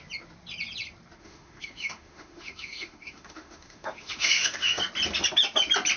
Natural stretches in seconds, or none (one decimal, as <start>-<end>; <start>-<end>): 0.0-1.2; 4.8-6.0